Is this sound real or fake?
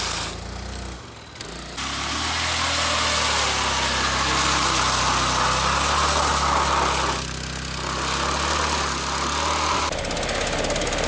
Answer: real